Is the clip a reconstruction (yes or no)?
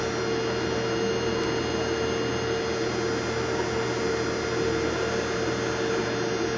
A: no